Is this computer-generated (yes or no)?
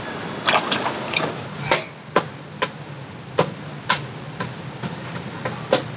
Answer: no